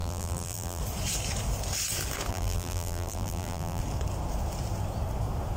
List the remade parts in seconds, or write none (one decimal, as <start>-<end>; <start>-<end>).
0.0-0.8; 2.3-3.8